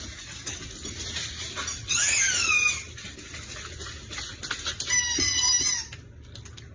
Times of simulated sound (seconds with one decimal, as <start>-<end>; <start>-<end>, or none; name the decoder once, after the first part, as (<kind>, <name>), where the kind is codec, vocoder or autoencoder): none